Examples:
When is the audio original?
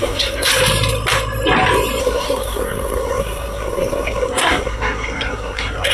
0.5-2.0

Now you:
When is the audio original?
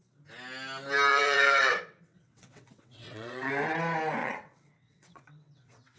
0.0-1.1; 3.5-4.2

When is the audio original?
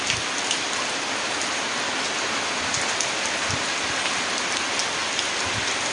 0.0-5.9